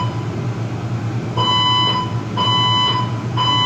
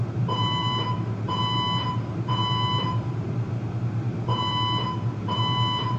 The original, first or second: first